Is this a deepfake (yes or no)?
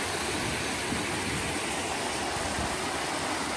no